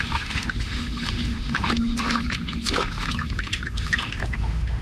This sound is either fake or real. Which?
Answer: fake